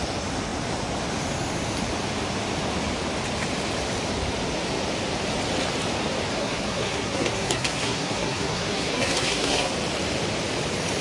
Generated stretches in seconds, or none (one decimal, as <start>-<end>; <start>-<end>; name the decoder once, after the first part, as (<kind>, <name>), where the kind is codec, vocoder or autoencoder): 6.4-9.7 (codec, SNAC)